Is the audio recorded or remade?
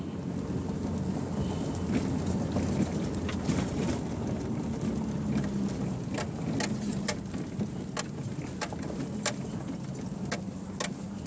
recorded